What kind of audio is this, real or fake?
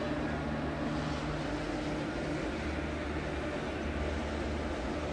real